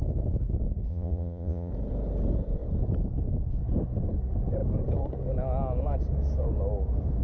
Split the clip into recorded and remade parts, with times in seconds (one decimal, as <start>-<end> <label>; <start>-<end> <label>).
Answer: 0.0-0.9 recorded; 0.9-1.7 remade; 1.7-7.2 recorded